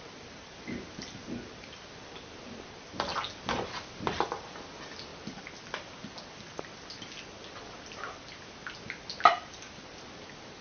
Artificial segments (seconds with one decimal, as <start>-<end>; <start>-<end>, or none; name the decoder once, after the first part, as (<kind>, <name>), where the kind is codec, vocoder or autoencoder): none